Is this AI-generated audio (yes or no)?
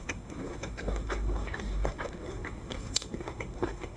yes